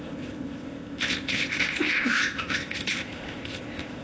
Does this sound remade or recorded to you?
remade